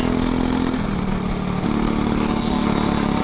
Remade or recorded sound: recorded